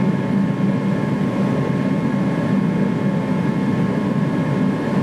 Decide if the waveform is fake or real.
real